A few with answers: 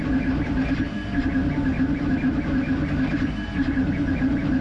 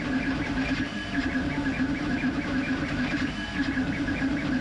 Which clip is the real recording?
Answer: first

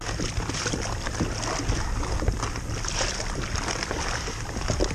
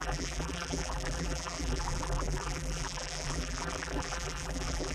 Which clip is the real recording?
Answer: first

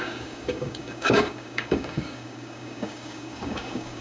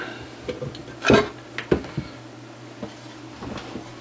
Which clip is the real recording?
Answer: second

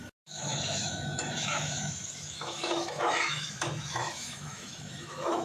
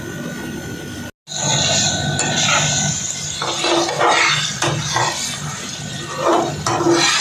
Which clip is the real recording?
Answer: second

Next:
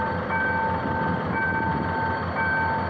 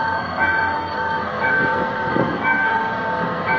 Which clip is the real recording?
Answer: first